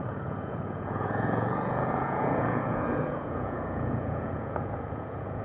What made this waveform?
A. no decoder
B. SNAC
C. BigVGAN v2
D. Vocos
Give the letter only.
D